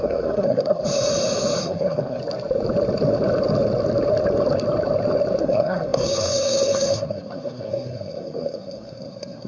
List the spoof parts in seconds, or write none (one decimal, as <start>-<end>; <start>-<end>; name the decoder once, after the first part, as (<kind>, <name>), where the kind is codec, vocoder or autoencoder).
0.0-0.8 (codec, SNAC); 1.6-2.2; 5.4-9.5